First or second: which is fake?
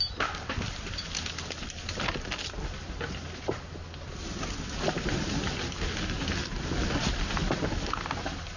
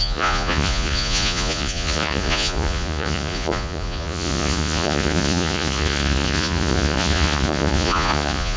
second